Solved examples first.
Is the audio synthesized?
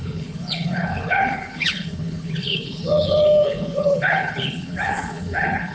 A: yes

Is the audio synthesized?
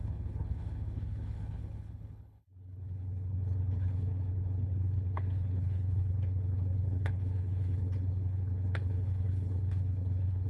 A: yes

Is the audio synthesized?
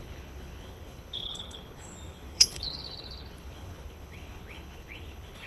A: yes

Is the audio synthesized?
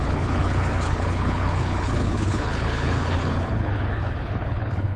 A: yes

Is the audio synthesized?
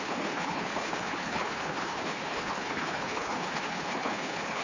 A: yes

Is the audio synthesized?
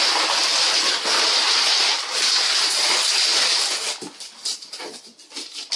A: no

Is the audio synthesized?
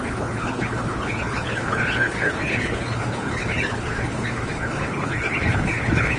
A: yes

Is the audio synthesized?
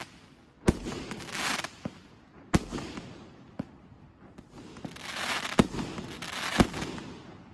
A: no